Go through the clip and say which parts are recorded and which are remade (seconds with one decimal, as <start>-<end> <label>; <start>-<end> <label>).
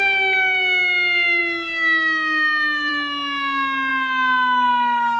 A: 0.0-5.2 recorded